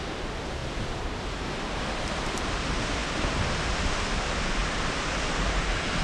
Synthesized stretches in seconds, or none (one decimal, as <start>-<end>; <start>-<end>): none